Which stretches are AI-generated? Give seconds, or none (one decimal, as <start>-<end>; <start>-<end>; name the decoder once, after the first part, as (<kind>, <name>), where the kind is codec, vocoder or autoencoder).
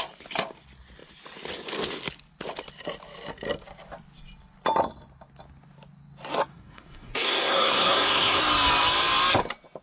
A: 6.5-8.4 (codec, SNAC)